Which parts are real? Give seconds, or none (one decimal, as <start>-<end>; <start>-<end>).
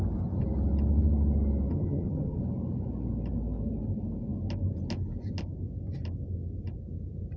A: 0.0-1.7; 2.4-7.4